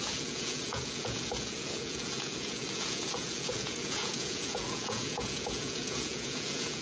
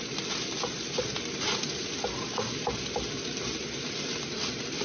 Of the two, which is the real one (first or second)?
second